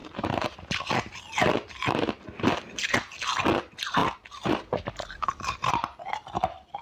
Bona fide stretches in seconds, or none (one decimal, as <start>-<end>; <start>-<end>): 1.2-4.0; 5.7-6.8